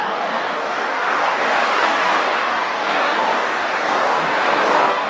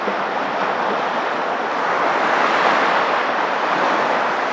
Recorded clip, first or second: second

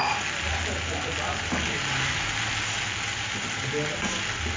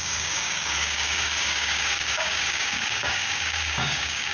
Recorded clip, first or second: first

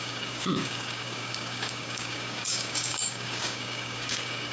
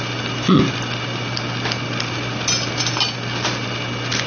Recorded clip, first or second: second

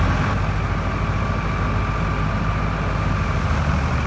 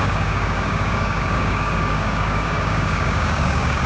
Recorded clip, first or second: first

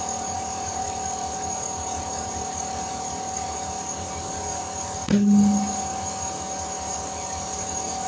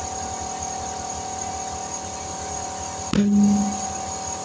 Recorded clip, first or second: second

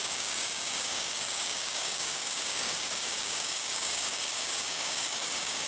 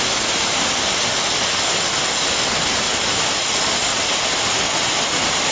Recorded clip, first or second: second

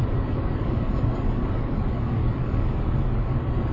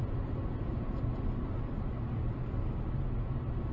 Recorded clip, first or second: second